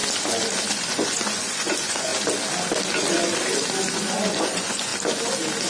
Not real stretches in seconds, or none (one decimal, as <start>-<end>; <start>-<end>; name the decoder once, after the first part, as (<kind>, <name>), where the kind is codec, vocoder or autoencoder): 0.7-2.1 (vocoder, Vocos); 3.9-4.9